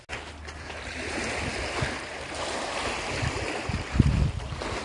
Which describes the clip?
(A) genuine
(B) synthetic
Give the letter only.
A